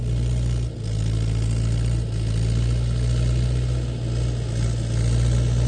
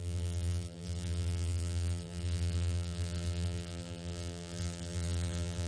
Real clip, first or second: first